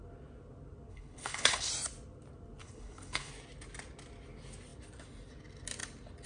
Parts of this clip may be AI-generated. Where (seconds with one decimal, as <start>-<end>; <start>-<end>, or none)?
0.9-1.7; 2.6-3.3